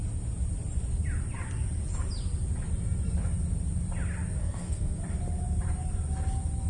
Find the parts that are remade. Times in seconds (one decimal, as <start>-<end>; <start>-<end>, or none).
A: 4.4-5.0